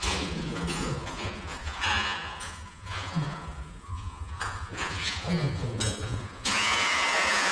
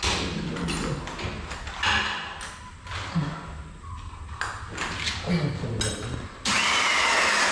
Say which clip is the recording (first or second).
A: second